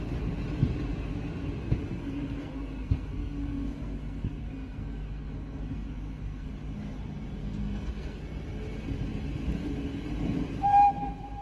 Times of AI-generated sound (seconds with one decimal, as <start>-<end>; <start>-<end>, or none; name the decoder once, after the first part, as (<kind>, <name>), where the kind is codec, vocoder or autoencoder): 1.9-6.5 (codec, SNAC); 7.4-8.2